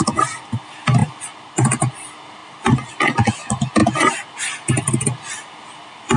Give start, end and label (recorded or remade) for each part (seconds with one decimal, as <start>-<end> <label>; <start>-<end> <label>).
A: 0.0-6.2 recorded